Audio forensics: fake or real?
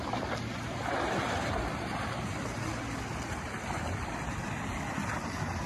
real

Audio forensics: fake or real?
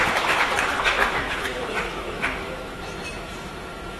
fake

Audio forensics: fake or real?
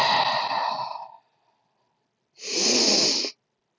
real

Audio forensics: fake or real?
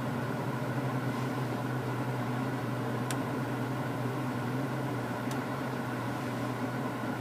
fake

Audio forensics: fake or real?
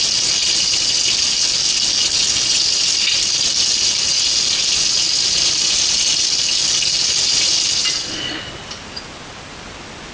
real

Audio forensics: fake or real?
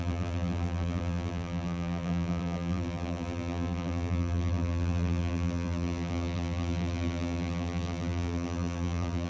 fake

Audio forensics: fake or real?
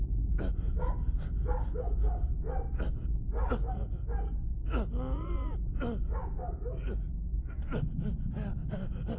real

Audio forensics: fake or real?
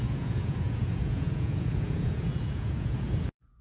fake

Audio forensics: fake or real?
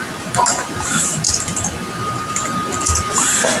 fake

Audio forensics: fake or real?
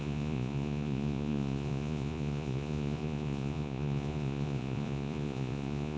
fake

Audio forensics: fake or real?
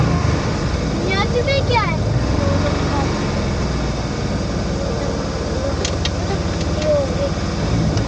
real